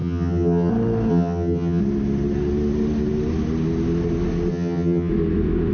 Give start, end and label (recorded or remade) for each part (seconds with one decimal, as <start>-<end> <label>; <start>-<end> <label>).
0.0-0.7 remade; 0.7-1.1 recorded; 1.1-1.8 remade; 1.8-4.5 recorded; 4.5-5.1 remade; 5.1-5.7 recorded

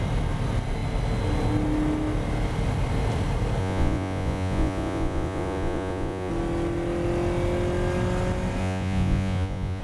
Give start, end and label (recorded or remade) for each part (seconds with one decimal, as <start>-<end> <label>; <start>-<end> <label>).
0.0-3.6 recorded; 3.6-6.3 remade; 6.3-8.6 recorded; 8.6-9.8 remade

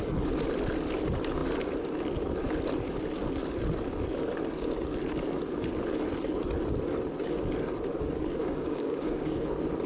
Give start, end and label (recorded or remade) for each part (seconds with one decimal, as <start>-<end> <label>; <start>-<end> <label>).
0.0-8.4 recorded; 8.4-9.5 remade; 9.5-9.9 recorded

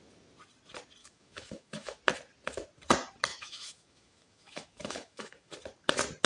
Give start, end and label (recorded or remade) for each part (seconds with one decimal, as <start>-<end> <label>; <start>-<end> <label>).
0.0-1.0 recorded; 1.0-2.0 remade; 2.0-3.3 recorded; 3.3-5.5 remade; 5.5-6.3 recorded

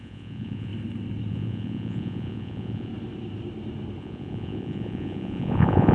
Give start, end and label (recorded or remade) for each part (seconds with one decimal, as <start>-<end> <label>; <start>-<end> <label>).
0.0-0.7 remade; 0.7-1.3 recorded; 1.3-2.9 remade; 2.9-4.0 recorded; 4.0-5.9 remade